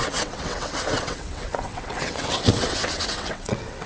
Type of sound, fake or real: fake